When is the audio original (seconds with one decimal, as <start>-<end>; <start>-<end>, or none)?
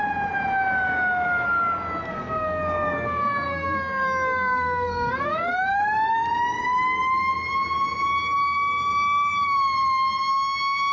0.0-2.1; 5.8-10.9